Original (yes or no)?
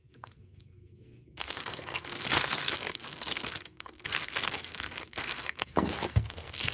no